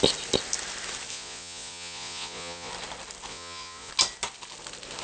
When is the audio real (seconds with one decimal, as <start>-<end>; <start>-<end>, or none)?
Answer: 0.0-1.1; 2.7-3.3; 3.9-5.0